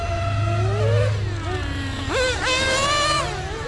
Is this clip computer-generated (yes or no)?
no